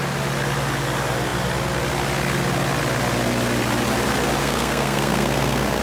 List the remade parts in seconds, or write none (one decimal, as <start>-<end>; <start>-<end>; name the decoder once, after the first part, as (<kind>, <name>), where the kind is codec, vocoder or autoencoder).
4.4-5.8 (codec, SNAC)